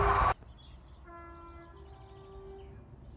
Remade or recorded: recorded